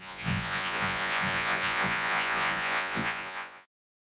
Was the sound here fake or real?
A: fake